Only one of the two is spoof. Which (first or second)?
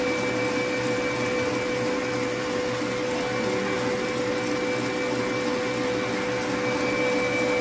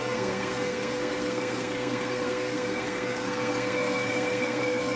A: second